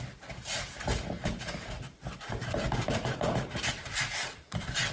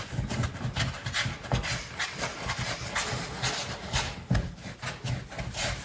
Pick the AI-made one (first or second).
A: first